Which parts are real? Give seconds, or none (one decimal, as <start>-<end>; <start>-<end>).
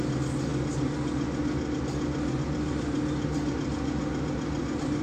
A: 0.0-5.0